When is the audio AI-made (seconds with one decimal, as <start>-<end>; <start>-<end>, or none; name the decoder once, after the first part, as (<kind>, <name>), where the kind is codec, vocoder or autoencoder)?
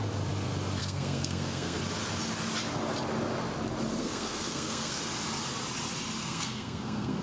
0.8-1.8 (codec, SNAC); 4.0-5.0; 6.2-7.2